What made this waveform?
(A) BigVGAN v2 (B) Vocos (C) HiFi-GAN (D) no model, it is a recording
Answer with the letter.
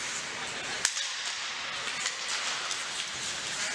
D